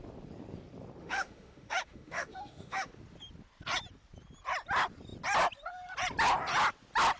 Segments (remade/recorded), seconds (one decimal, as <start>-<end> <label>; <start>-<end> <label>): 0.0-1.0 recorded; 1.0-2.9 remade; 2.9-7.2 recorded